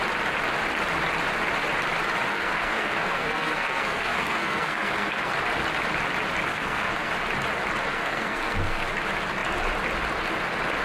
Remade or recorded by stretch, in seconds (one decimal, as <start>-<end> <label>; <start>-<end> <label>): 0.0-2.3 recorded; 2.3-5.3 remade; 5.3-6.5 recorded; 6.5-7.1 remade; 7.1-7.9 recorded; 7.9-8.9 remade; 8.9-10.8 recorded